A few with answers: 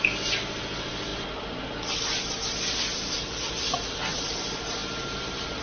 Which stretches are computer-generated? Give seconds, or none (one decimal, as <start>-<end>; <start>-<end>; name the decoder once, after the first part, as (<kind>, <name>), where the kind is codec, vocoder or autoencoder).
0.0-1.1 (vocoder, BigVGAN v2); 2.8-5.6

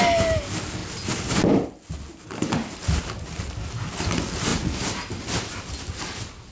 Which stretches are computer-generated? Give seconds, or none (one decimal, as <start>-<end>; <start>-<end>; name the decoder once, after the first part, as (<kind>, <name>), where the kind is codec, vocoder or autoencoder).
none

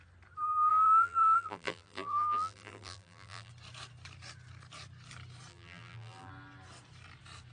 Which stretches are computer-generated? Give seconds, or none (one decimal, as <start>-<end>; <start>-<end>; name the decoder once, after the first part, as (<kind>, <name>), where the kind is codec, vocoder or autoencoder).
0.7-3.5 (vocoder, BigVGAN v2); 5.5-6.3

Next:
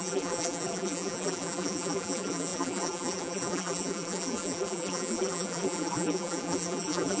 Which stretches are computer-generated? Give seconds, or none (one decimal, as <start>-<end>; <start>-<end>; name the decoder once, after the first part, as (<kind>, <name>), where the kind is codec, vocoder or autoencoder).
0.0-7.2 (vocoder, BigVGAN v2)

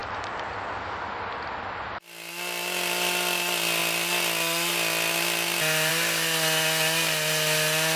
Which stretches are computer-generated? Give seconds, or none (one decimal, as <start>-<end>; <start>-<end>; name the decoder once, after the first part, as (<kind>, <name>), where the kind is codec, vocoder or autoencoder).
0.0-0.8 (vocoder, BigVGAN v2)